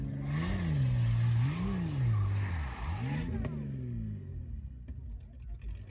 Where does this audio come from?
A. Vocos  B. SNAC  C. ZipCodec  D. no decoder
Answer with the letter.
D